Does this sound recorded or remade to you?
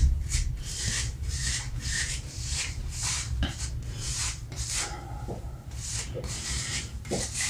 remade